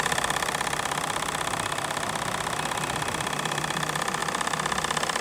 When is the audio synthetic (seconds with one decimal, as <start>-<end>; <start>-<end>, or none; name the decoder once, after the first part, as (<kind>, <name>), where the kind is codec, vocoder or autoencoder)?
none